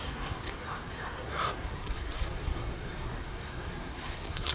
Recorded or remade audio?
remade